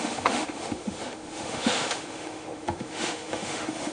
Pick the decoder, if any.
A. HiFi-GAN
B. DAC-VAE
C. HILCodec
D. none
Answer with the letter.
B